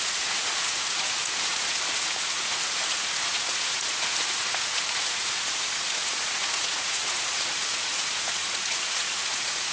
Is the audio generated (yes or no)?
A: yes